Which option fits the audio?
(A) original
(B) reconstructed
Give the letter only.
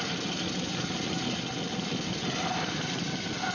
A